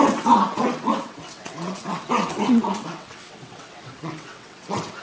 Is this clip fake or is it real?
fake